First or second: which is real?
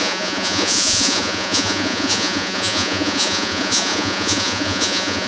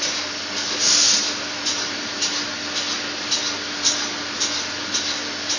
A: second